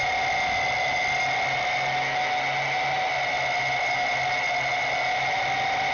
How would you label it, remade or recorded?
recorded